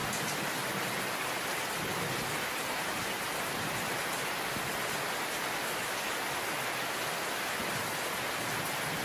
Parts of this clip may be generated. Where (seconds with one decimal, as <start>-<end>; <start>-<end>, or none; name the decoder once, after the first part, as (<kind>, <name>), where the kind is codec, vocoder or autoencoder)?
none